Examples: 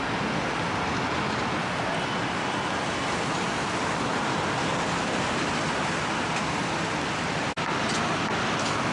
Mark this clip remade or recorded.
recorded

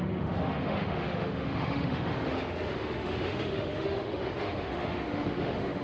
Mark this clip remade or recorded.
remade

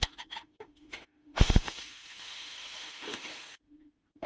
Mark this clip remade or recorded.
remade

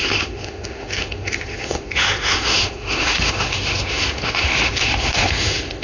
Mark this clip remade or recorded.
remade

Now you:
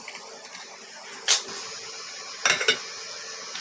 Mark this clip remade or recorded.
recorded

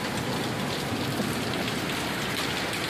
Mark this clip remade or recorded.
recorded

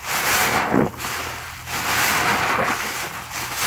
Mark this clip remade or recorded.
recorded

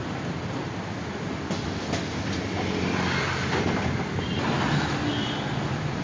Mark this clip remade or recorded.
recorded